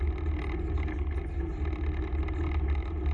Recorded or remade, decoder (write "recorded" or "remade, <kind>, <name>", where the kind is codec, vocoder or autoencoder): recorded